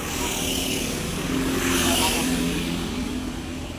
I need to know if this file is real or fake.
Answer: fake